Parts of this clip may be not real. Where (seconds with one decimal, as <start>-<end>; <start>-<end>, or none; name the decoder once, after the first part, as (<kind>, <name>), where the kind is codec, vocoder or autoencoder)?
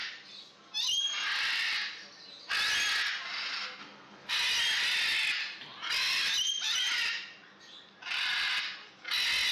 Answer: 3.8-4.3 (codec, SNAC)